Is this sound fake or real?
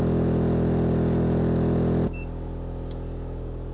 real